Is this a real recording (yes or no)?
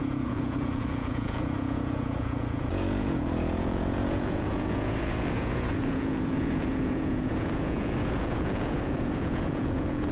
no